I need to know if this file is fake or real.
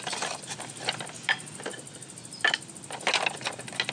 real